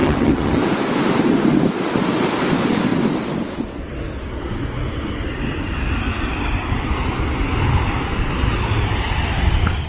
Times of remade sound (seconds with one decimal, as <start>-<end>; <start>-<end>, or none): 0.0-0.6